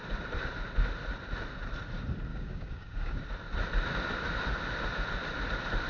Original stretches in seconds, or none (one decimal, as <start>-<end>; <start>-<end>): 0.0-2.3; 3.2-5.9

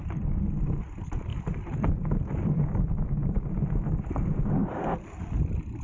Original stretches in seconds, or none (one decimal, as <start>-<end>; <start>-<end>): 0.0-1.3; 2.8-3.2; 4.0-4.6

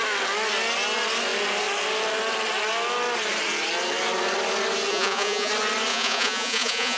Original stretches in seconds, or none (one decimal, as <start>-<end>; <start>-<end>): 0.0-4.9; 5.5-5.9